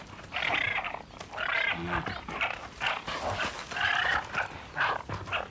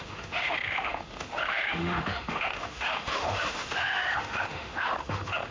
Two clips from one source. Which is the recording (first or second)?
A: first